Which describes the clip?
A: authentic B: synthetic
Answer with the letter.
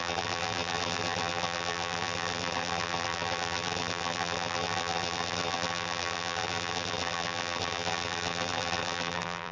B